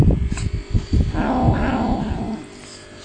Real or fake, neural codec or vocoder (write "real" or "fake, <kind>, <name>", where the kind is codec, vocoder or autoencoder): real